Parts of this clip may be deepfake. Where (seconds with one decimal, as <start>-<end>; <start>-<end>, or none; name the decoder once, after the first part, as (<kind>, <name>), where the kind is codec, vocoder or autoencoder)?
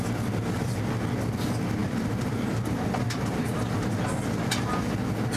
1.8-4.0 (vocoder, BigVGAN v2)